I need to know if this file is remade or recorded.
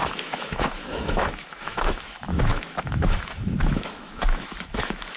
remade